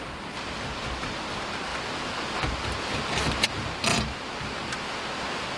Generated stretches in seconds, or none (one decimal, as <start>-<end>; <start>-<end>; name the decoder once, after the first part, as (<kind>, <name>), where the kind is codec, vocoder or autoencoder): none